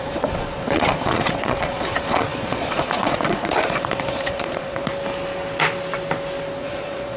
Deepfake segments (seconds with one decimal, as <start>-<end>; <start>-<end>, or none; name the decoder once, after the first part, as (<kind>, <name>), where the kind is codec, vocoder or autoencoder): 0.0-4.9 (vocoder, Vocos); 6.6-7.2